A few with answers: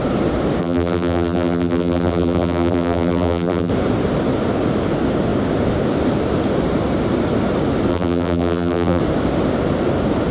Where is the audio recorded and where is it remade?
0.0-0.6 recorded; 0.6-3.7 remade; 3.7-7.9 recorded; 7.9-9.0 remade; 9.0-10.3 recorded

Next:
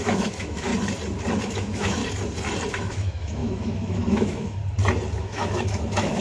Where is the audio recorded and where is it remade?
0.0-0.7 remade; 0.7-1.4 recorded; 1.4-2.0 remade; 2.0-2.7 recorded; 2.7-4.6 remade; 4.6-5.2 recorded; 5.2-6.2 remade